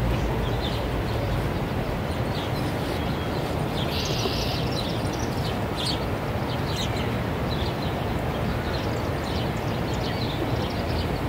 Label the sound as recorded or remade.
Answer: recorded